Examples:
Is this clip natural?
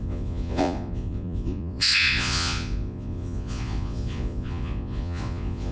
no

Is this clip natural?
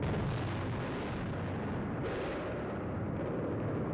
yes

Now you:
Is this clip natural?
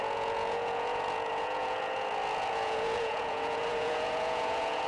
no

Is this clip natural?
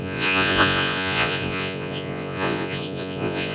no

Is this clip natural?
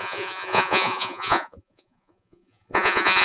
no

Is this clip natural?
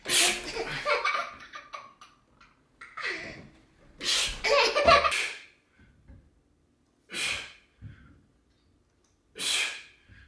yes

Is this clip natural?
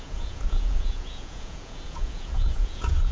no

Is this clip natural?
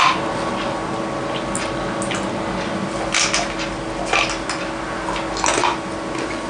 yes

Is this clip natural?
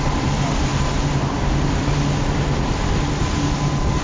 yes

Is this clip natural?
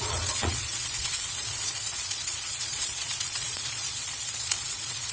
no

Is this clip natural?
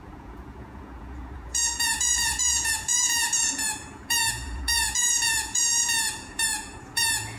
no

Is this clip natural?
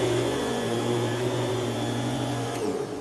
no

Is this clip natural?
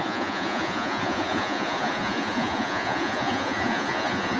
no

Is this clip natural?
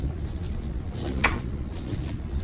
no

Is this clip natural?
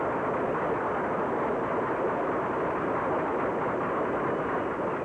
yes